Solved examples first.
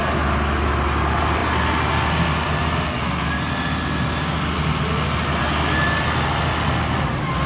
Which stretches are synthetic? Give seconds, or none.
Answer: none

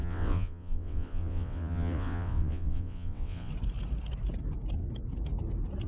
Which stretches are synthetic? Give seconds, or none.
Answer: 0.0-3.5 (vocoder, WaveNeXt)